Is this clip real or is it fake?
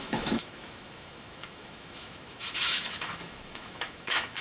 fake